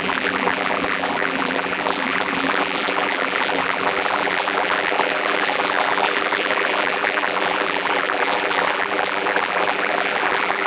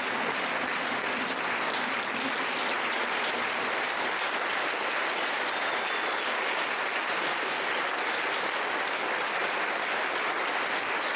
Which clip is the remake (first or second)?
first